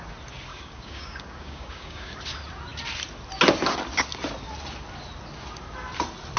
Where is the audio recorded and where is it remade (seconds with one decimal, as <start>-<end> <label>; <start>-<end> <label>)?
0.0-0.5 recorded; 0.5-2.2 remade; 2.2-6.4 recorded